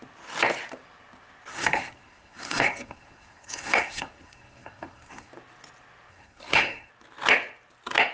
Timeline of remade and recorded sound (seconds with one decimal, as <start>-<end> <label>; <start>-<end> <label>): 0.0-1.5 recorded; 1.5-5.3 remade; 5.3-6.1 recorded; 6.1-6.9 remade; 6.9-8.1 recorded